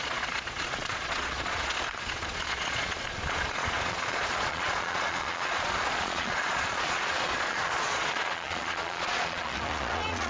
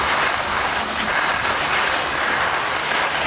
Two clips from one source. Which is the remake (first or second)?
first